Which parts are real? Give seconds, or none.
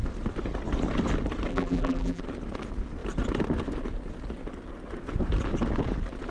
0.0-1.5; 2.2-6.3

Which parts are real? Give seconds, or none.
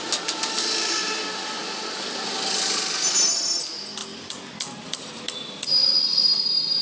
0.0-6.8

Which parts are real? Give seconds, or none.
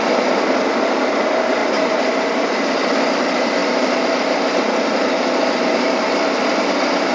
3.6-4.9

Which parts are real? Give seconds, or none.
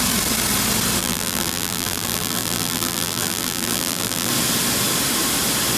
0.0-1.0; 4.3-5.8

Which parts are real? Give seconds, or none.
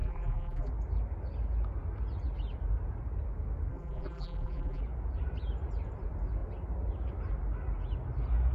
0.7-3.7; 4.8-8.5